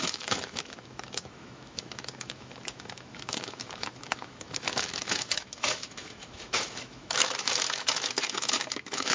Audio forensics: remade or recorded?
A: remade